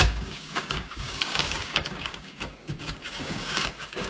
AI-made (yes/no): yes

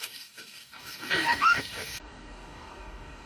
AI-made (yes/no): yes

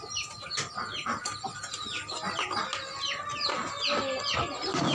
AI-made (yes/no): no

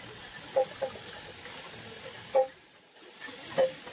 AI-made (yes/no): no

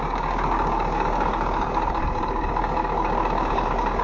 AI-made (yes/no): yes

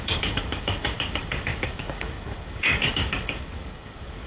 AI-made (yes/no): yes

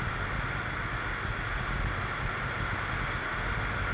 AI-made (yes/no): no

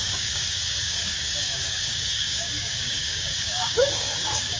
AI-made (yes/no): yes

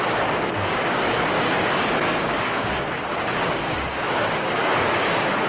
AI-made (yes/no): yes